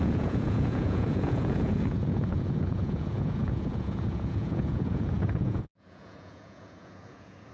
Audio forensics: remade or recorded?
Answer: remade